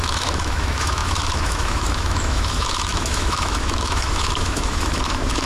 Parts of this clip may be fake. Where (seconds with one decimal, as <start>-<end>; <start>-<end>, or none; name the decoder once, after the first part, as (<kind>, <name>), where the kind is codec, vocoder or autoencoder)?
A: 0.0-5.5 (autoencoder, DAC-VAE)